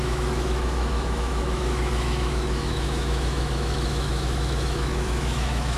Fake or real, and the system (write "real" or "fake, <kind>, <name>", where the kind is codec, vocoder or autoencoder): fake, autoencoder, DAC-VAE